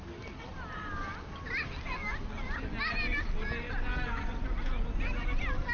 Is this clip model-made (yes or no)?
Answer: no